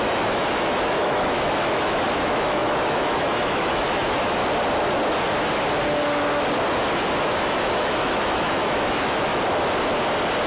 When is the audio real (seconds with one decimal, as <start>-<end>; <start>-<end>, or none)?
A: 4.4-7.2; 9.3-10.5